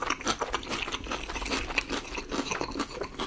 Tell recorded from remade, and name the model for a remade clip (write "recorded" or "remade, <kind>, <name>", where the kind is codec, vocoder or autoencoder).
recorded